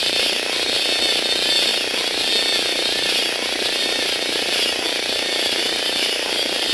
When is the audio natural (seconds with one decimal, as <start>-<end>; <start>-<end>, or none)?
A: 0.8-1.7; 2.3-2.7